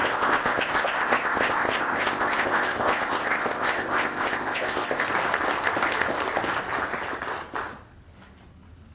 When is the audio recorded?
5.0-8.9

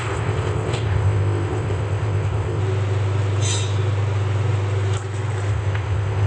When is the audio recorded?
2.6-5.5

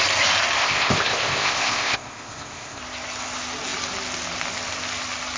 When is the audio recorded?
0.0-0.6; 2.8-5.4

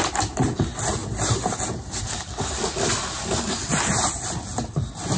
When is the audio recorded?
0.0-5.2

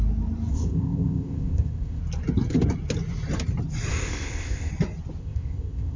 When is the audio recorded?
0.0-0.5; 2.0-3.9; 4.7-5.2

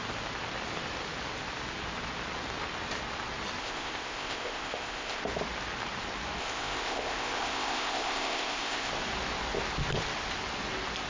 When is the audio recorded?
0.0-3.6; 5.2-6.4; 8.9-11.1

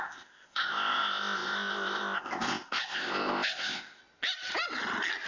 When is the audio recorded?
4.0-5.3